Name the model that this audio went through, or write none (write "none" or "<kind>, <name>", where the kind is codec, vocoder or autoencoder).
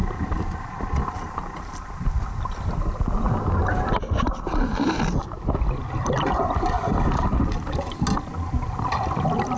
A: none